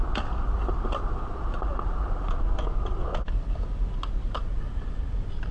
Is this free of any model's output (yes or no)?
yes